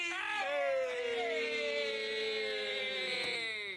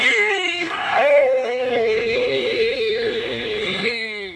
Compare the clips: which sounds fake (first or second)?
second